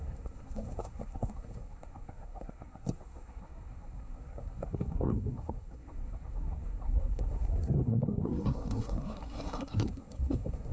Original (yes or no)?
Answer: no